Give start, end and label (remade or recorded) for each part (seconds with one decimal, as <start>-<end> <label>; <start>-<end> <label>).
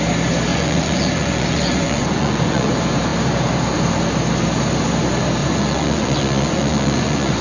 0.0-0.5 recorded; 0.5-2.7 remade; 2.7-5.4 recorded; 5.4-7.4 remade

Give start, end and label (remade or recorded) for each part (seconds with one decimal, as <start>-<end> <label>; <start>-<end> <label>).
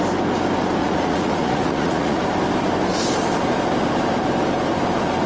0.0-0.8 recorded; 0.8-2.2 remade; 2.2-5.3 recorded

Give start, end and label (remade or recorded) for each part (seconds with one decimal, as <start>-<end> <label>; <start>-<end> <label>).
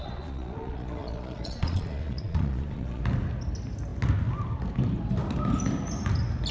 0.0-3.0 remade; 3.0-6.5 recorded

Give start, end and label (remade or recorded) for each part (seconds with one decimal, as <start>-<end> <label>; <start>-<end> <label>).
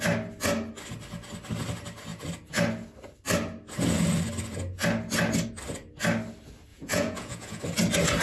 0.0-6.7 recorded; 6.7-7.6 remade; 7.6-8.2 recorded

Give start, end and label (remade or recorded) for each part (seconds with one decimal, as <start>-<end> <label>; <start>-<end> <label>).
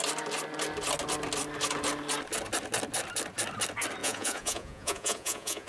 0.0-4.0 recorded; 4.0-5.7 remade